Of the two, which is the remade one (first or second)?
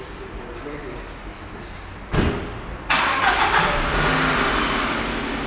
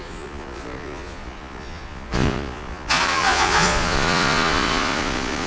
second